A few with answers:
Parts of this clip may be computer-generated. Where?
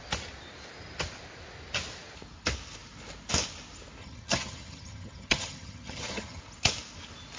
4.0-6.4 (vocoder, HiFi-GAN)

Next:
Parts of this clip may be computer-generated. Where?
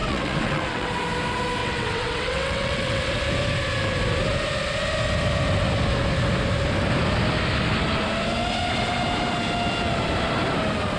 0.0-0.9 (vocoder, WaveNeXt); 1.6-3.0